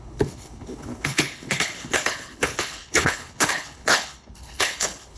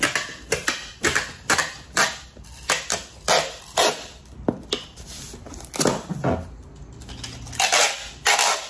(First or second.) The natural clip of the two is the second